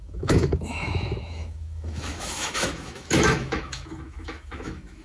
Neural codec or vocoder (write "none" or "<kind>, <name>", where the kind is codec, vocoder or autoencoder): autoencoder, DAC-VAE